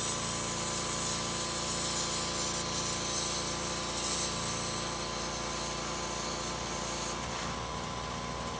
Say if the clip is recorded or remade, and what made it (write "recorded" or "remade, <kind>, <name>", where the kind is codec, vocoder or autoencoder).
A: recorded